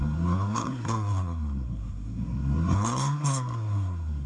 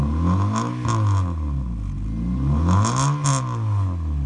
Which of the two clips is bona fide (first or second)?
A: second